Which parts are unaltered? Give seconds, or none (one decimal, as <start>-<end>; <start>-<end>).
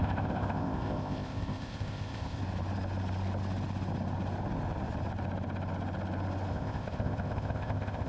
2.4-6.5